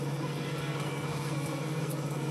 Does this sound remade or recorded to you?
remade